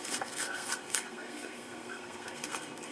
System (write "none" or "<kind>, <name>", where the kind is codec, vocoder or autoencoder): codec, SNAC